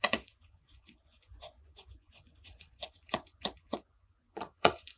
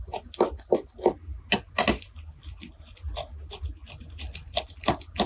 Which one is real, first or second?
second